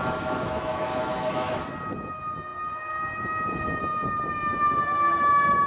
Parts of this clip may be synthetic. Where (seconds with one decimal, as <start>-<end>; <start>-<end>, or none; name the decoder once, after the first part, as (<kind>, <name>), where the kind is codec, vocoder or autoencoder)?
0.0-1.7 (autoencoder, DAC-VAE)